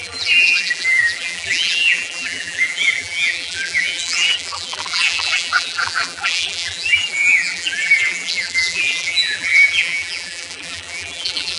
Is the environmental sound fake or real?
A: fake